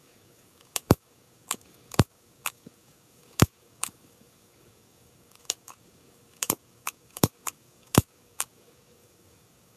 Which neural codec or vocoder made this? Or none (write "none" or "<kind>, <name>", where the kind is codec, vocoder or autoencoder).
codec, DAC